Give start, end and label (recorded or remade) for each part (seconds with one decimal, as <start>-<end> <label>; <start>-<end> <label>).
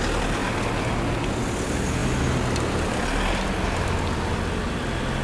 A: 0.0-5.2 recorded